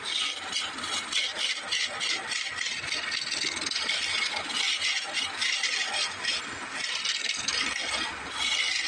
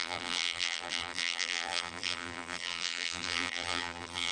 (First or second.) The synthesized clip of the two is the second